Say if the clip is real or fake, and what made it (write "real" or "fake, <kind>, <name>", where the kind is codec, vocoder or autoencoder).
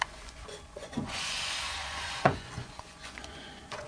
fake, vocoder, Vocos